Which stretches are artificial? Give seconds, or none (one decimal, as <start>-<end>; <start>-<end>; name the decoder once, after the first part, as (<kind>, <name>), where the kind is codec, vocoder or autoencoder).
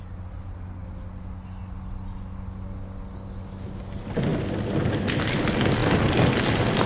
none